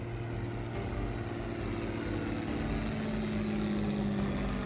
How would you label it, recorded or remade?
recorded